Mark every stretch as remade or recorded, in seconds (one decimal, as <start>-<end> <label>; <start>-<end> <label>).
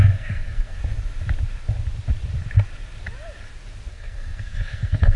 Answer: 0.0-0.8 remade; 0.8-3.9 recorded; 3.9-5.2 remade